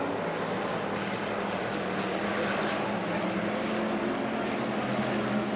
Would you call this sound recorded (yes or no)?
yes